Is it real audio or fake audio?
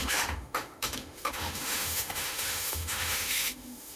fake